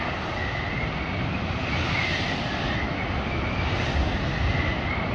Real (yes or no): yes